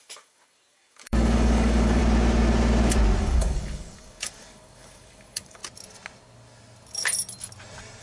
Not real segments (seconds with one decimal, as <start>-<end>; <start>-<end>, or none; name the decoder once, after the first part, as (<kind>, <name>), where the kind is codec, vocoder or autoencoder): 0.0-2.0 (codec, DAC); 3.2-5.6